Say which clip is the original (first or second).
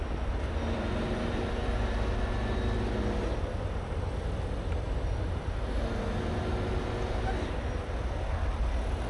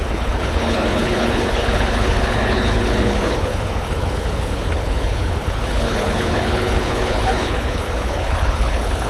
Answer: first